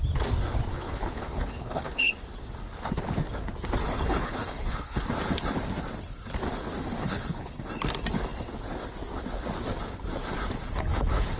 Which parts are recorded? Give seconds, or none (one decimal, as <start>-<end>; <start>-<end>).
0.0-0.7; 2.1-3.8; 5.0-7.0; 7.6-11.4